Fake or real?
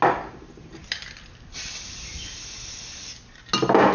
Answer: real